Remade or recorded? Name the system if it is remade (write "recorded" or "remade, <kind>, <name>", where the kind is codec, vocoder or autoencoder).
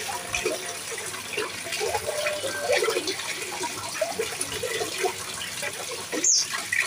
recorded